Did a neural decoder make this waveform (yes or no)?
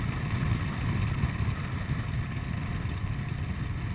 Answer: no